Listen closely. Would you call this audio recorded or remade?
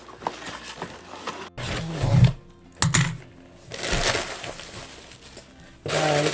recorded